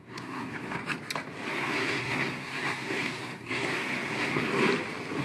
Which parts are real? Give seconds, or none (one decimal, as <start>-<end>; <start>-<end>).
0.8-1.5; 4.5-5.2